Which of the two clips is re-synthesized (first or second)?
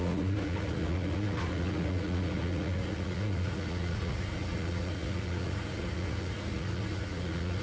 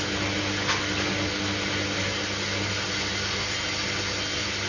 first